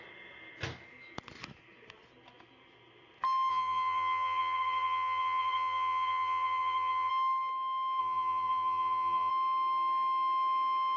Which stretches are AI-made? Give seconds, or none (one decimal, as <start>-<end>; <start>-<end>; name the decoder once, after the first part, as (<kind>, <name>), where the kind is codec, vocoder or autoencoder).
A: 3.5-7.1 (vocoder, HiFi-GAN); 8.0-9.3